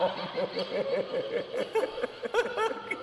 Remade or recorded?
recorded